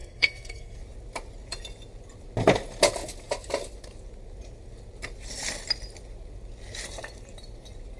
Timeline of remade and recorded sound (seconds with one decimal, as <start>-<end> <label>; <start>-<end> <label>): 0.0-0.8 remade; 0.8-8.0 recorded